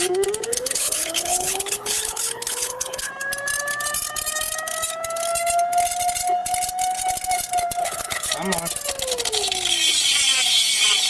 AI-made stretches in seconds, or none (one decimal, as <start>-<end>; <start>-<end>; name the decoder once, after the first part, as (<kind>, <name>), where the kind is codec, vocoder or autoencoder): 0.5-3.1 (codec, HILCodec); 7.8-8.3